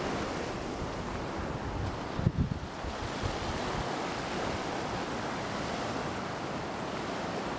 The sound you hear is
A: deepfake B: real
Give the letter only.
B